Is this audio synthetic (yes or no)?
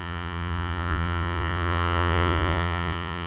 yes